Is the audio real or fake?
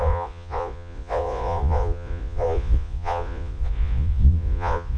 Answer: fake